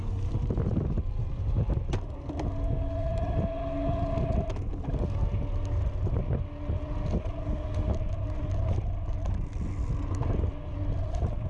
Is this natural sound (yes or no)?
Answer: yes